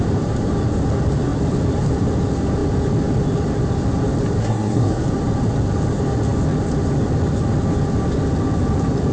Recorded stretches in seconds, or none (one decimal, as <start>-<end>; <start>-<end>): 0.0-4.4; 5.0-9.1